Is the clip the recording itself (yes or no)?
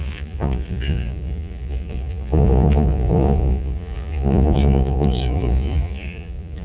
no